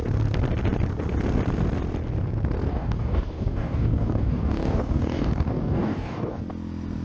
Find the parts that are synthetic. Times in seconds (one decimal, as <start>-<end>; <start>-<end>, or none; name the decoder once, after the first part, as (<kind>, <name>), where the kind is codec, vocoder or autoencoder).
2.7-6.4 (codec, DAC)